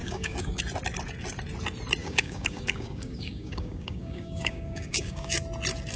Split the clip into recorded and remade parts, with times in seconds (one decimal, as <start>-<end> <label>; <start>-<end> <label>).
0.0-0.6 remade; 0.6-2.0 recorded; 2.0-5.3 remade; 5.3-6.0 recorded